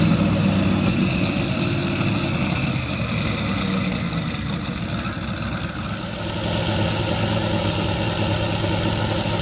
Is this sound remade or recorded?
recorded